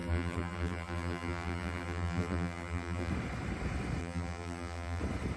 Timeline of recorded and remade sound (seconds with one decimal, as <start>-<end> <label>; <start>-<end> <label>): 0.0-3.1 remade; 3.1-4.0 recorded; 4.0-5.0 remade; 5.0-5.4 recorded